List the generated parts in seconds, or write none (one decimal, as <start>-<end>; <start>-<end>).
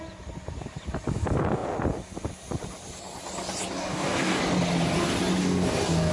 3.8-4.4; 5.4-6.1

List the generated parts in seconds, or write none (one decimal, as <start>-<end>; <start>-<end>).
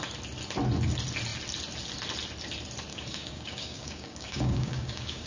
2.9-5.3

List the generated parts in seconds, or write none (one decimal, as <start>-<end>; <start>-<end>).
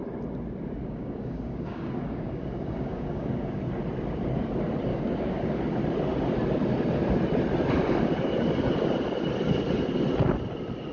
0.8-3.6; 4.9-5.6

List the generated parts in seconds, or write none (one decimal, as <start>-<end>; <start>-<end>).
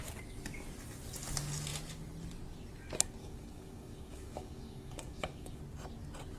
3.2-5.6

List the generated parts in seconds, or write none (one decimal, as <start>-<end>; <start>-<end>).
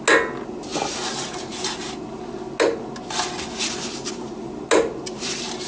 none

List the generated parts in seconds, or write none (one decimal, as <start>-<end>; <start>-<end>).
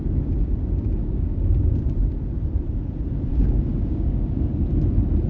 1.0-1.7; 3.3-4.5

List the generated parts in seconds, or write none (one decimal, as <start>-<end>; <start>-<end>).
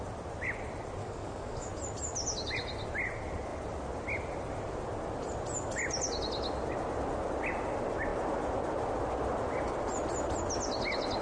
1.0-1.7